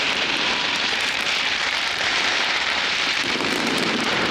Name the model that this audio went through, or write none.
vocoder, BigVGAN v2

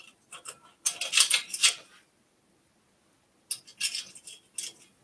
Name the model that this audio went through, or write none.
none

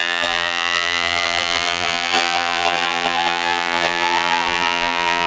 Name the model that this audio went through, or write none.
vocoder, BigVGAN v2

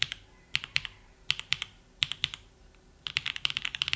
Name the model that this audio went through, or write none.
vocoder, BigVGAN v2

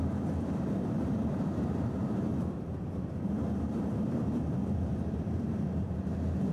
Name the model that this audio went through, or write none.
vocoder, BigVGAN v2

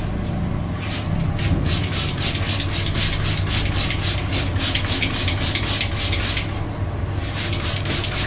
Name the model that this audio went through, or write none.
none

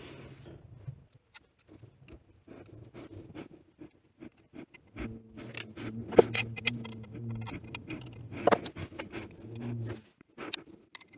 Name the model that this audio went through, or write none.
none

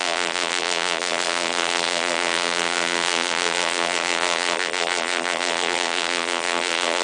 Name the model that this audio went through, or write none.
vocoder, BigVGAN v2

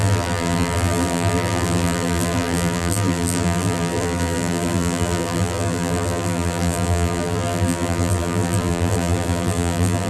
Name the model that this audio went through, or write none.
vocoder, BigVGAN v2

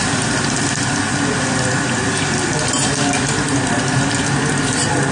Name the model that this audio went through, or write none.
none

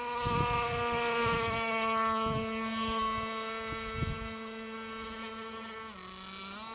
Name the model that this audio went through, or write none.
none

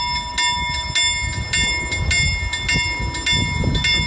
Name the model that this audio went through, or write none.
none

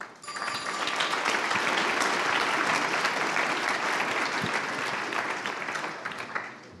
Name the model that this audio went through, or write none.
none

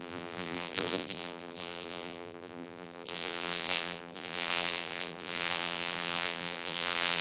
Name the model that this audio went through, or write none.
vocoder, BigVGAN v2